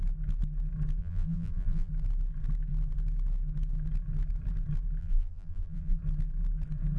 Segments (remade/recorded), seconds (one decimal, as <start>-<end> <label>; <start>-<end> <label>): 0.0-1.0 recorded; 1.0-1.9 remade; 1.9-5.0 recorded; 5.0-6.0 remade; 6.0-7.0 recorded